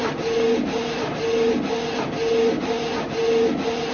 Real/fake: real